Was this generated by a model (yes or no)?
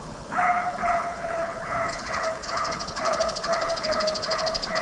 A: yes